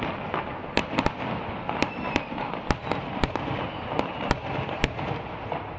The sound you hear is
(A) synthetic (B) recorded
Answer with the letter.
B